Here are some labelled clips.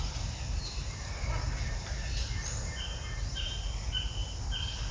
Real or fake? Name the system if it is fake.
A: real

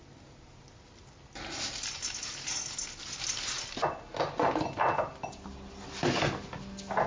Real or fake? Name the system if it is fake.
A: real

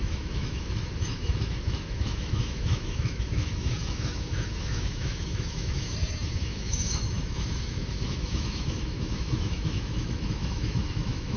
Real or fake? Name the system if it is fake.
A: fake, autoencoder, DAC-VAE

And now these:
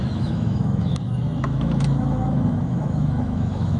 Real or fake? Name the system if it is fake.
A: fake, autoencoder, DAC-VAE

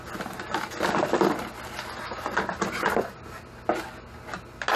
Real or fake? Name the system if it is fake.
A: real